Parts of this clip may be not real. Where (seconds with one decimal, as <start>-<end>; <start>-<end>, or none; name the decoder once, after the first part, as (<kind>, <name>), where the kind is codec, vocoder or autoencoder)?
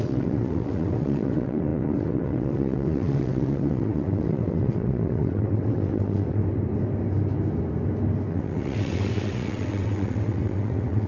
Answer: 0.0-6.4 (vocoder, WaveNeXt); 8.3-11.1